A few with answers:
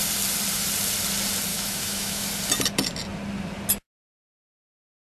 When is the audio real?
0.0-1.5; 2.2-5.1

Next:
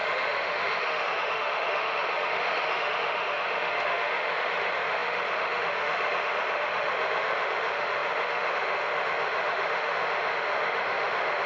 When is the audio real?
none

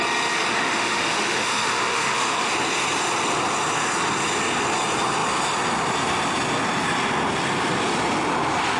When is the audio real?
0.0-0.5; 2.5-8.8